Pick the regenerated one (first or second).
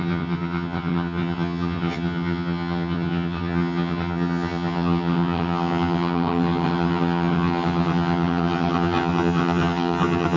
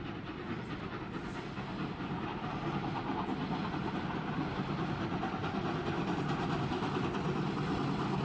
first